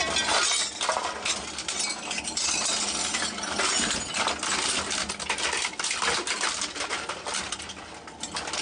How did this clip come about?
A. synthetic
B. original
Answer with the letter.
B